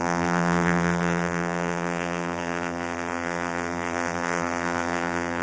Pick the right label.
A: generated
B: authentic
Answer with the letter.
A